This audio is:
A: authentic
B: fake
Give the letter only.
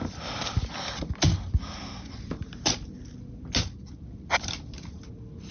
A